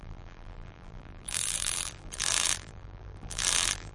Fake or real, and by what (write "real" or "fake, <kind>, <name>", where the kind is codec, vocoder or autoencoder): fake, vocoder, BigVGAN v2